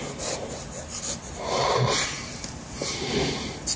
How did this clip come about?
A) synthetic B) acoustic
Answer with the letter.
B